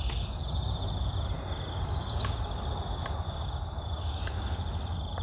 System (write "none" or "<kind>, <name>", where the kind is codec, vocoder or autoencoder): none